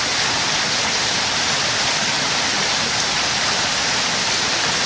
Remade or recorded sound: recorded